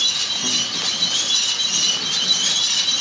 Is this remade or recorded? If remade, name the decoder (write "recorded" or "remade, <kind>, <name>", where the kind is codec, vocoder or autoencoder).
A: recorded